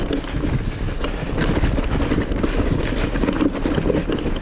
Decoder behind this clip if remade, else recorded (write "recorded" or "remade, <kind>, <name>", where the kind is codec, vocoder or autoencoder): recorded